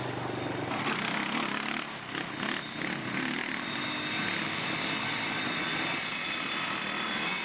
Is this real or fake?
real